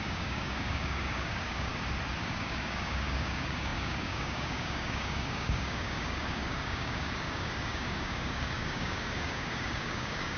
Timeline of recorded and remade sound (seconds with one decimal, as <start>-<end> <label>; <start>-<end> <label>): 0.0-1.7 remade; 1.7-2.2 recorded; 2.2-10.4 remade